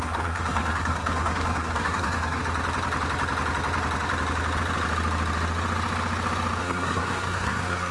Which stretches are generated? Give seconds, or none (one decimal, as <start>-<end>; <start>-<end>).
0.0-2.4; 6.6-7.9